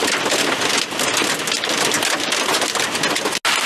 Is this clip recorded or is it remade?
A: recorded